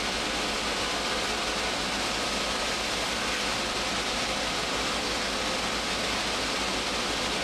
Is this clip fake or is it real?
real